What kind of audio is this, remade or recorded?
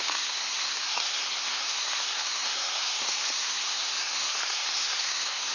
remade